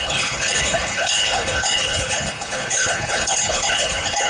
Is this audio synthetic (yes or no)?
yes